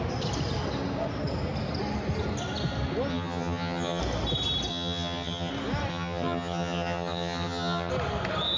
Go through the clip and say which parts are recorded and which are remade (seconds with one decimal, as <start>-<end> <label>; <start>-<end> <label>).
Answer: 0.0-3.1 recorded; 3.1-4.0 remade; 4.0-4.7 recorded; 4.7-5.5 remade; 5.5-5.9 recorded; 5.9-7.9 remade; 7.9-8.6 recorded